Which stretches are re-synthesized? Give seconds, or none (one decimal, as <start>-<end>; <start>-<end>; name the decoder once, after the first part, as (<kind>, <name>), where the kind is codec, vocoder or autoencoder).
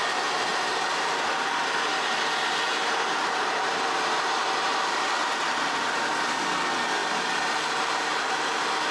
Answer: 0.5-1.6 (vocoder, BigVGAN v2); 3.1-3.7; 5.2-6.0; 7.0-8.4